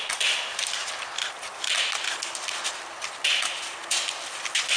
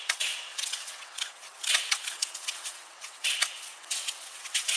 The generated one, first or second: second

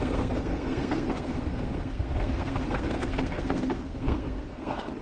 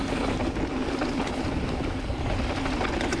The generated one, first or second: first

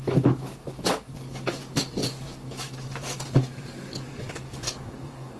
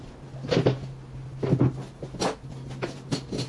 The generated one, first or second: first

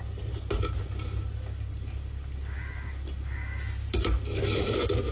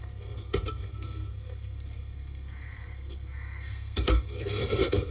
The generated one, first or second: second